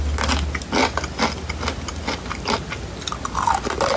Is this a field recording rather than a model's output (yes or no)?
yes